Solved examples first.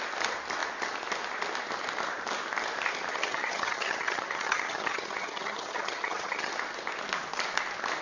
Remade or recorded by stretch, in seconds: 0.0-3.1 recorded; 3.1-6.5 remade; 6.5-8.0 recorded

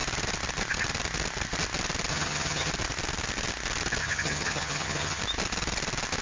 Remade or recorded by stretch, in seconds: 0.0-2.1 recorded; 2.1-2.7 remade; 2.7-4.0 recorded; 4.0-5.2 remade; 5.2-6.2 recorded

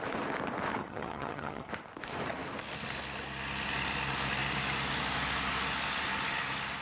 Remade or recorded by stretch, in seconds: 0.0-0.8 recorded; 0.8-1.7 remade; 1.7-6.8 recorded

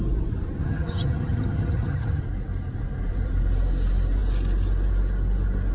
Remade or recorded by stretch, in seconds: 0.0-0.6 recorded; 0.6-2.2 remade; 2.2-5.7 recorded

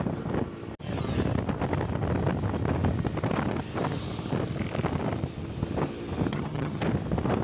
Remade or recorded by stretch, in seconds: 0.0-6.3 recorded; 6.3-6.8 remade; 6.8-7.4 recorded

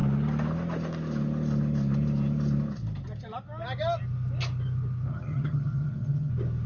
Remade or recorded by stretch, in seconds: 0.0-5.1 recorded; 5.1-6.3 remade; 6.3-6.7 recorded

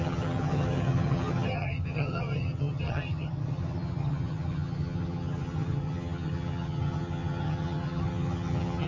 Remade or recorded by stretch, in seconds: 0.0-8.9 remade

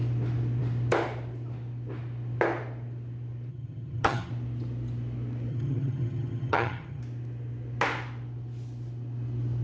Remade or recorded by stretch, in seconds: 0.0-3.5 recorded; 3.5-4.3 remade; 4.3-5.5 recorded; 5.5-7.0 remade; 7.0-9.6 recorded